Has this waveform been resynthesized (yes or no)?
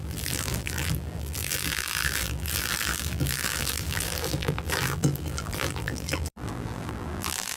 yes